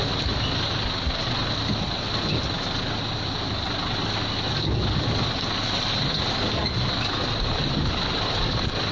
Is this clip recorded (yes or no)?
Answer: yes